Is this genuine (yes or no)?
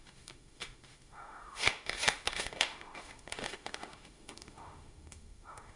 no